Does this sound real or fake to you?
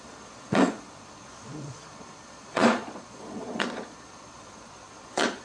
fake